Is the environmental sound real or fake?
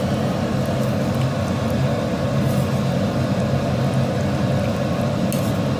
real